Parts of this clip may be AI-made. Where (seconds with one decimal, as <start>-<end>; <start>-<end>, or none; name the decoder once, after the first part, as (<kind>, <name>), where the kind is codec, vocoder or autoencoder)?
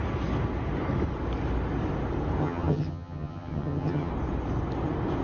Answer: 2.4-4.1 (vocoder, HiFi-GAN)